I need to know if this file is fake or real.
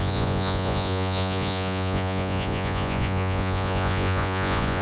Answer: fake